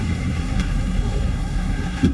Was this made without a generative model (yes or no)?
no